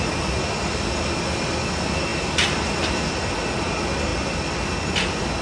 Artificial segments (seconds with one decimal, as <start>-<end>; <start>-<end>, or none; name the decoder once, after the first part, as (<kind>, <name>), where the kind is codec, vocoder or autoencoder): none